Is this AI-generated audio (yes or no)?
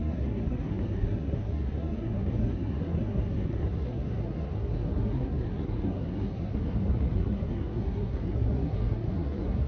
yes